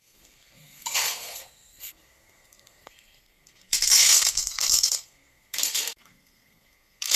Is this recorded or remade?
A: remade